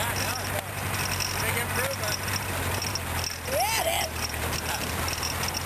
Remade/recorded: recorded